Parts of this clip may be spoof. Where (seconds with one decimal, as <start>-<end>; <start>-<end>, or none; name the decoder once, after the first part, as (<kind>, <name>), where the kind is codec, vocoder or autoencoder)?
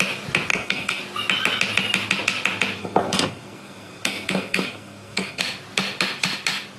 0.5-1.0 (codec, SNAC); 2.8-5.4